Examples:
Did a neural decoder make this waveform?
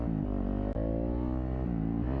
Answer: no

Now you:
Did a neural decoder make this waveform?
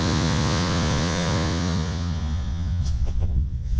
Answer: yes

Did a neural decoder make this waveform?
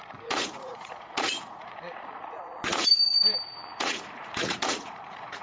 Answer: yes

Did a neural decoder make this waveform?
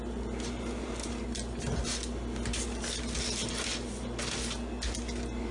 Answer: no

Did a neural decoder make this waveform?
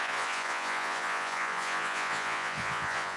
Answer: yes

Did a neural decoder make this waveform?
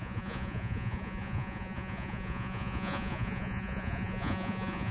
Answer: yes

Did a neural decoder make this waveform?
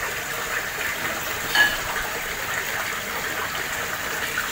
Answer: no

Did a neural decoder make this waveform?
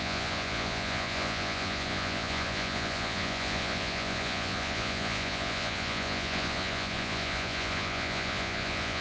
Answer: yes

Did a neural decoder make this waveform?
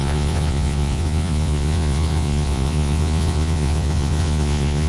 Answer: yes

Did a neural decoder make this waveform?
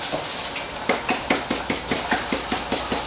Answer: no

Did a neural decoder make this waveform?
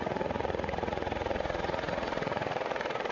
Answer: yes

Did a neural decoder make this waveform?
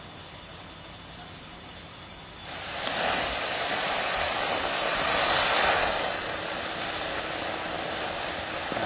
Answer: no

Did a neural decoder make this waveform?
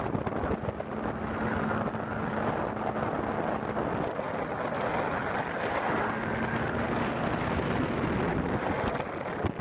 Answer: no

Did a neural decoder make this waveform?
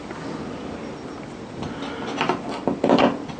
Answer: no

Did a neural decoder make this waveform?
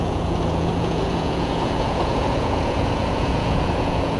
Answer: yes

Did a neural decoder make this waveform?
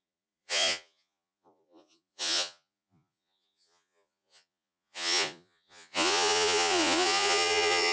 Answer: yes